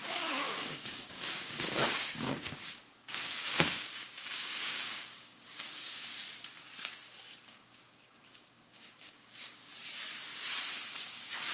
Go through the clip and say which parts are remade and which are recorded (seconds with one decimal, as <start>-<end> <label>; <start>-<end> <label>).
0.0-6.0 remade; 6.0-7.2 recorded; 7.2-9.7 remade; 9.7-11.0 recorded; 11.0-11.5 remade